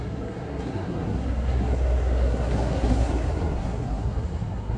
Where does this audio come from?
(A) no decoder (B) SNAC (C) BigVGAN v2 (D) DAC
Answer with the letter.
B